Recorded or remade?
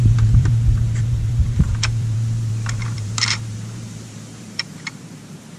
remade